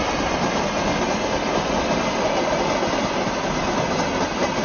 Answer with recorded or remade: recorded